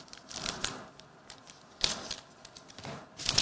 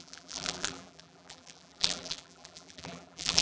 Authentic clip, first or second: first